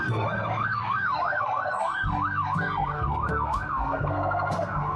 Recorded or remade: remade